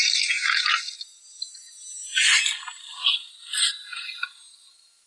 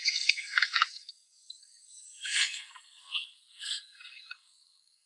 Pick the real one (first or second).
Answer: first